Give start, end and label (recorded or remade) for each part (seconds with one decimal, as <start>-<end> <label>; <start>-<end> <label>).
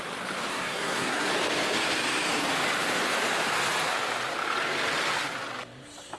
0.0-0.5 recorded; 0.5-1.3 remade; 1.3-6.2 recorded